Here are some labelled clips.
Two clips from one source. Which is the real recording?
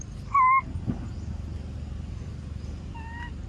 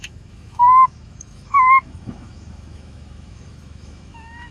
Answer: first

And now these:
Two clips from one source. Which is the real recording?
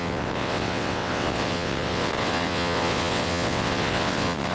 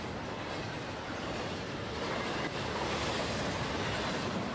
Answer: second